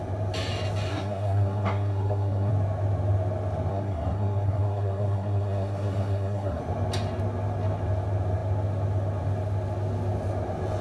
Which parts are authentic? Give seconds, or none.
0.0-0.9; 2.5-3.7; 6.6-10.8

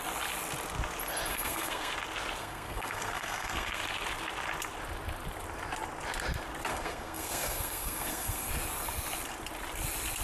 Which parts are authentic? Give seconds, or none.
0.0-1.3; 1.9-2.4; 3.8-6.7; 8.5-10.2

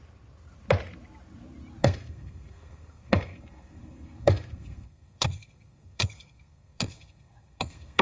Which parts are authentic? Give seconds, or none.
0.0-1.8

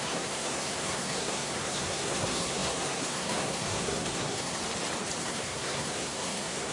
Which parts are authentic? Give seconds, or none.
4.6-5.2

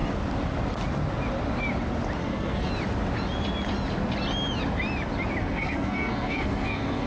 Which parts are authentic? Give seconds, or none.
0.0-2.2; 2.7-5.4

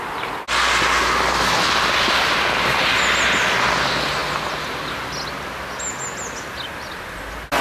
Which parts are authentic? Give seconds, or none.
0.0-7.6

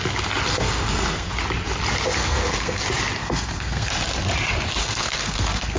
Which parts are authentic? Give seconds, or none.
0.0-0.5; 1.3-2.1; 2.8-3.2; 3.9-4.8

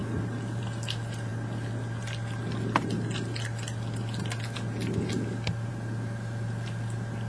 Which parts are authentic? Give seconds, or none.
0.0-7.3